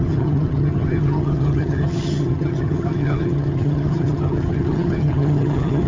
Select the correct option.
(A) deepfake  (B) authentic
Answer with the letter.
A